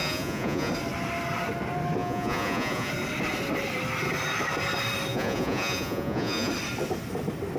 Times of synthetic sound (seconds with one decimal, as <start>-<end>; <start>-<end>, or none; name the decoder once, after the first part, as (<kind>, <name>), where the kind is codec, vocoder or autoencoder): 0.0-0.7 (vocoder, Vocos); 2.0-2.9; 5.1-6.5